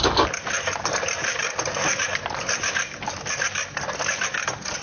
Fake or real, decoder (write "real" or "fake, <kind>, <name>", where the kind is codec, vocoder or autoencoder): real